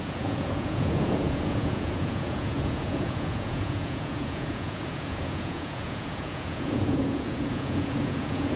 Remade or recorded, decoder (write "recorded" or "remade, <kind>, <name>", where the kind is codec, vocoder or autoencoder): remade, vocoder, Vocos